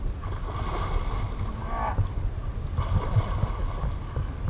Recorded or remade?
recorded